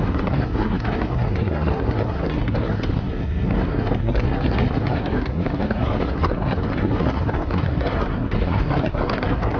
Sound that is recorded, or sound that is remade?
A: remade